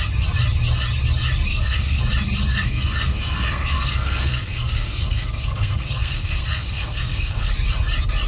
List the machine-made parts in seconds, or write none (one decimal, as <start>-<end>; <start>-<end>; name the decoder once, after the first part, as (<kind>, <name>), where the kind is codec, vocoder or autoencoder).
1.5-2.0 (codec, SNAC); 2.5-7.5